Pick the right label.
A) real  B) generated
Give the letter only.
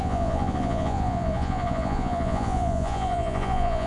B